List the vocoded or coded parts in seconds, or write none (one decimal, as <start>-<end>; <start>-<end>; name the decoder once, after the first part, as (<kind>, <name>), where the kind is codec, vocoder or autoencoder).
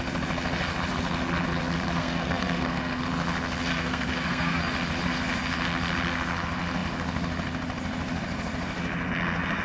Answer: 2.0-3.0 (codec, SNAC); 3.7-4.6